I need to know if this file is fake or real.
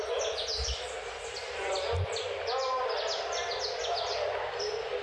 real